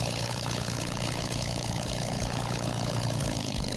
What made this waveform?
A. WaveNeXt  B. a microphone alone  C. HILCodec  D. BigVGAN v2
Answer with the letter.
C